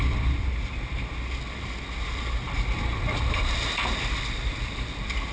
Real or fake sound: real